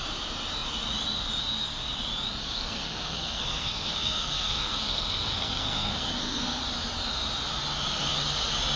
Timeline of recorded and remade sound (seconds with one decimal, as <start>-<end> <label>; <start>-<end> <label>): 0.0-2.4 recorded; 2.4-6.6 remade; 6.6-8.8 recorded